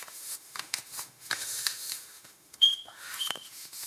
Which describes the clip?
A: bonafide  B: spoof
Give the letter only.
B